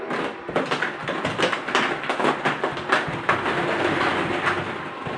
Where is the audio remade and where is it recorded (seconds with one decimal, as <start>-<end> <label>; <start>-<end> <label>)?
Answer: 0.0-5.2 recorded